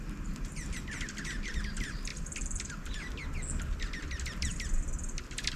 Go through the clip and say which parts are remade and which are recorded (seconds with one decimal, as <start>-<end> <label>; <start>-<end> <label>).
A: 0.0-5.6 recorded

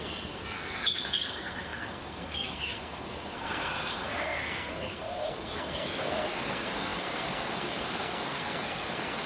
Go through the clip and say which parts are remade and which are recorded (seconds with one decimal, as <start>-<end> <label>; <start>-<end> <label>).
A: 0.0-9.3 remade

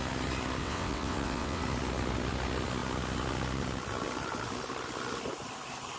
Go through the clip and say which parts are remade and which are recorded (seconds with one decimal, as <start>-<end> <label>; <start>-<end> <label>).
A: 0.0-0.6 recorded; 0.6-1.6 remade; 1.6-6.0 recorded

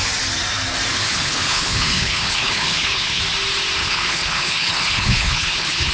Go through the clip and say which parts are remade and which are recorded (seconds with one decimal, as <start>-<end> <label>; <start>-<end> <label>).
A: 0.0-0.9 recorded; 0.9-3.2 remade; 3.2-3.8 recorded; 3.8-5.9 remade

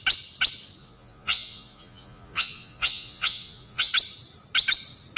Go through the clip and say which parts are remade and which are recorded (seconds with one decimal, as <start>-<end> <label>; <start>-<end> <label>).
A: 0.0-0.8 recorded; 0.8-3.9 remade; 3.9-5.2 recorded

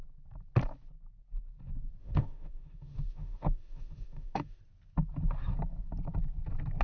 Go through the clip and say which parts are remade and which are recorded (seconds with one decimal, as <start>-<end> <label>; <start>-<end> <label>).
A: 0.0-2.0 recorded; 2.0-4.6 remade; 4.6-6.8 recorded

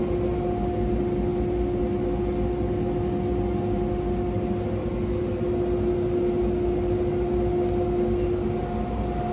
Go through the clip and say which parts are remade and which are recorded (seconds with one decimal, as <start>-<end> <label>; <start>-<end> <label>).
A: 0.0-9.3 recorded